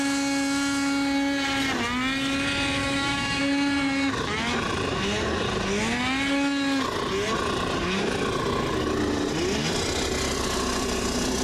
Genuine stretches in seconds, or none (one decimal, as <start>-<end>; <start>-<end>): 0.0-2.8; 3.4-11.4

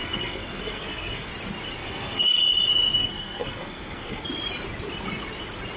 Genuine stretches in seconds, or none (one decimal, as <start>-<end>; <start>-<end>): 1.3-1.8; 2.4-3.0; 4.3-5.8

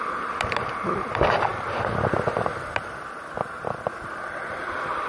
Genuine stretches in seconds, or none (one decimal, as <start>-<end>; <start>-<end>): 0.0-5.1

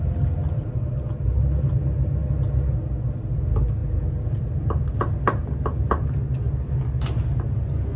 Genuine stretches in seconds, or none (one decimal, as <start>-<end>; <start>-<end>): 0.0-8.0

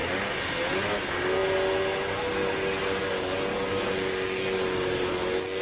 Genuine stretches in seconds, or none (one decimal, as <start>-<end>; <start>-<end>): 0.0-5.6

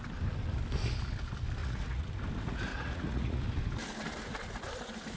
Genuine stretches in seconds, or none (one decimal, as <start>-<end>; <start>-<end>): 0.0-1.6; 2.1-2.7; 3.4-5.2

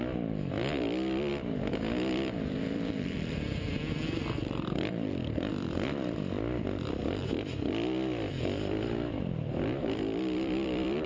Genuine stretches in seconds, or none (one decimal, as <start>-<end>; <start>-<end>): 1.3-2.1; 7.0-8.3